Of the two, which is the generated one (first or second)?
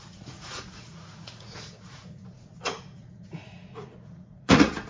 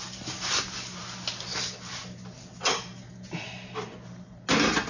first